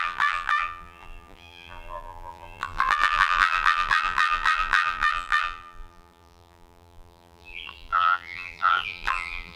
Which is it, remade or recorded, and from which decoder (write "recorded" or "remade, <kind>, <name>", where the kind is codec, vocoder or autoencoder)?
remade, vocoder, BigVGAN v2